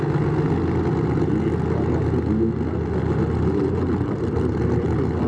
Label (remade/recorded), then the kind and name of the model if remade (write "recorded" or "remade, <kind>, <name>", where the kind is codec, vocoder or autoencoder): recorded